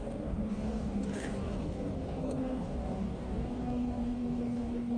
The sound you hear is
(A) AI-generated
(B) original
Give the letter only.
A